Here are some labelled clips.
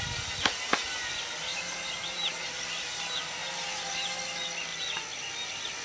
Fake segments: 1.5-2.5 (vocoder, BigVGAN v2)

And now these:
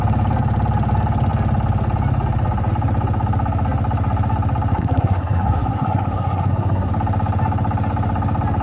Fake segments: 4.7-6.9 (codec, SNAC)

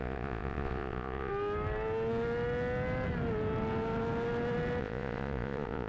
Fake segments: 0.0-1.3 (vocoder, Vocos); 4.8-5.9

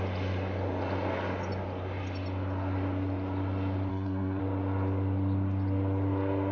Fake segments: 3.9-4.4 (codec, SNAC)

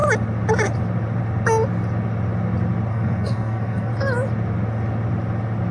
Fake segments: 2.9-3.9 (codec, SNAC)

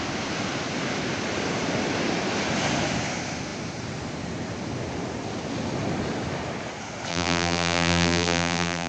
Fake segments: 7.1-8.9 (vocoder, BigVGAN v2)

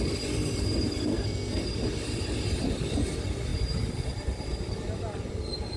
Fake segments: 1.1-1.6 (codec, SNAC)

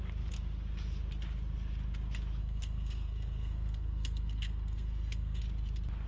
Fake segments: 2.4-5.4 (codec, SNAC)